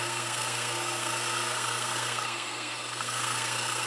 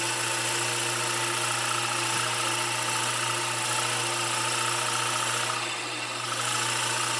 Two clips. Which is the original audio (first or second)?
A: second